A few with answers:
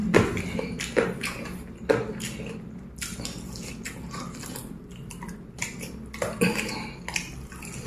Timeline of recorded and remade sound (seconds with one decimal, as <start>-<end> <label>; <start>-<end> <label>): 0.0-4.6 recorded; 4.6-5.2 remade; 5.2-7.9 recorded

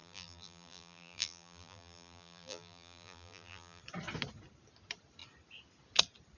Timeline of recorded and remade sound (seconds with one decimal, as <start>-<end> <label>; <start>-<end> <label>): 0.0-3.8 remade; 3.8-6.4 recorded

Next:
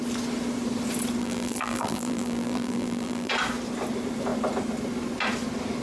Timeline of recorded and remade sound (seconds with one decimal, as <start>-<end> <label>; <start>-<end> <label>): 0.0-1.2 recorded; 1.2-3.3 remade; 3.3-5.8 recorded